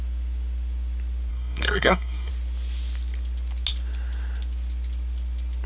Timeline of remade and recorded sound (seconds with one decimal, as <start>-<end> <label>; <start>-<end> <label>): 0.0-1.3 recorded; 1.3-2.3 remade; 2.3-5.7 recorded